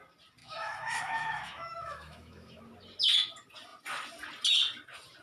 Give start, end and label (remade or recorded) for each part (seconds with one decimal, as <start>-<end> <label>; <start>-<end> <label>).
0.0-0.4 recorded; 0.4-2.6 remade; 2.6-5.2 recorded